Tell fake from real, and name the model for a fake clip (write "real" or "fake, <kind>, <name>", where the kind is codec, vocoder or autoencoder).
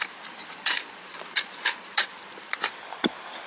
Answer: fake, vocoder, BigVGAN v2